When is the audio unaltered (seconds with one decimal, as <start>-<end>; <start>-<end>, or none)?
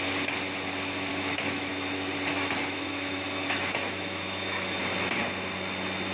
0.0-1.1; 1.7-2.3; 4.8-6.1